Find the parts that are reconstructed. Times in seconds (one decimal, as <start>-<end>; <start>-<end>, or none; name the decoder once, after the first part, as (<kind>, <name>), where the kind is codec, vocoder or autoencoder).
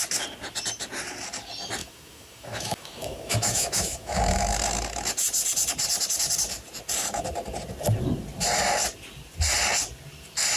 1.8-4.5 (autoencoder, DAC-VAE)